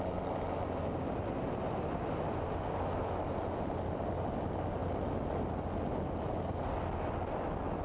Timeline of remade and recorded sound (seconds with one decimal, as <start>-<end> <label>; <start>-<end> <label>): 0.0-7.8 recorded